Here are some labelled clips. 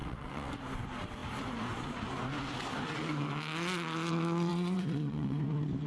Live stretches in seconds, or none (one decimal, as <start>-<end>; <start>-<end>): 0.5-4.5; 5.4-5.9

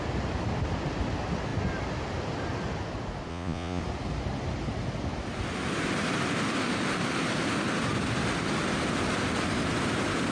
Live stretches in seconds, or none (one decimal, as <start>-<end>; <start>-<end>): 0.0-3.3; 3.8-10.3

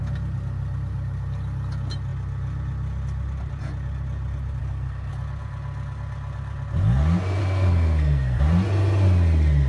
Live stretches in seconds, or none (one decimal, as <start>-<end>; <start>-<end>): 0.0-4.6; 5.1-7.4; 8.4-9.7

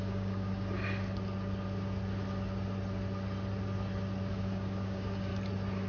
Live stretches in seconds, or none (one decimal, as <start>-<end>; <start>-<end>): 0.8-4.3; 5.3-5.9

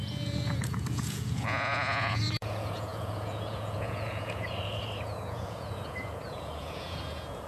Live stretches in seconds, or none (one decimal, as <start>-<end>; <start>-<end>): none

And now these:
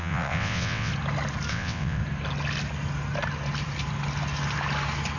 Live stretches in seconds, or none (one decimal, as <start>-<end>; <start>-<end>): 0.9-1.5; 2.0-5.2